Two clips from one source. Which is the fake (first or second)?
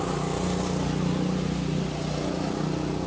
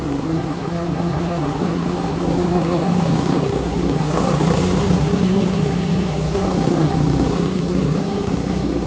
second